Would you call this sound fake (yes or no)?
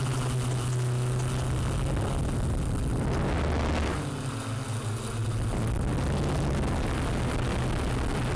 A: no